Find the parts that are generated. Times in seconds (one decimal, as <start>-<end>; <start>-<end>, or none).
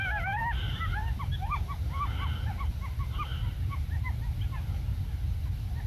3.3-4.9